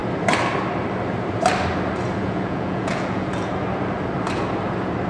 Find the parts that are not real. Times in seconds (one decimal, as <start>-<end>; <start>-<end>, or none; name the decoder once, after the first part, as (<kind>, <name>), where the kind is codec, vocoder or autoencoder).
2.2-3.5 (vocoder, Vocos)